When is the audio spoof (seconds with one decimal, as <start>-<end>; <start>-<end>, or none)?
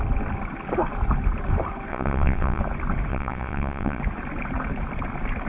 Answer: 1.9-2.6; 3.1-4.0